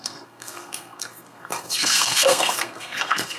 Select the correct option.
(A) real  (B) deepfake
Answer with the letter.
B